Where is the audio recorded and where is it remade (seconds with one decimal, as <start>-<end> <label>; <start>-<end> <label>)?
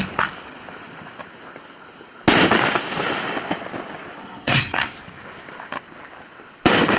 0.0-4.2 recorded; 4.2-4.9 remade; 4.9-7.0 recorded